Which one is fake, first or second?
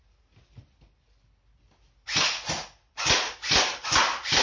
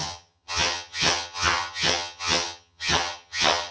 second